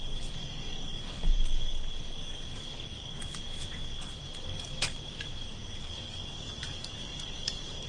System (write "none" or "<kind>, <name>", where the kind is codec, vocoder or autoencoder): codec, DAC